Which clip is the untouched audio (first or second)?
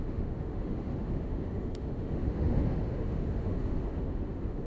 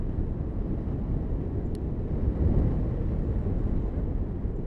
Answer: second